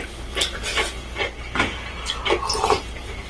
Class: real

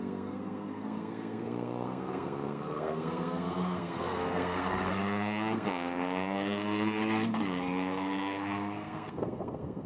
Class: fake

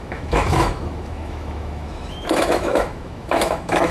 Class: fake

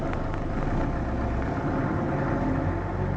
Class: real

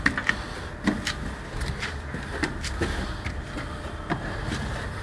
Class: real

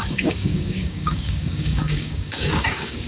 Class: fake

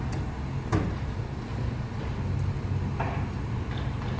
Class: real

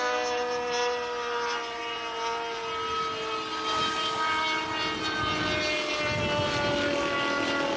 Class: real